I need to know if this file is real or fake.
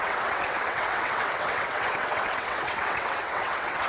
fake